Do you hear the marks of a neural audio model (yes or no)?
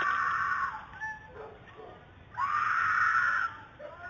no